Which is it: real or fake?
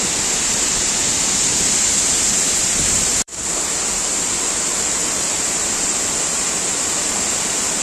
fake